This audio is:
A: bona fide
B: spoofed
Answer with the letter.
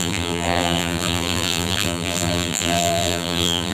B